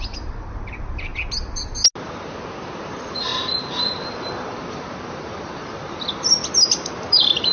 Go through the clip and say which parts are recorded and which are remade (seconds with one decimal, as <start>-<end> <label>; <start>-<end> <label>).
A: 0.0-1.1 remade; 1.1-2.8 recorded; 2.8-3.3 remade; 3.3-4.2 recorded; 4.2-6.4 remade; 6.4-7.1 recorded; 7.1-7.5 remade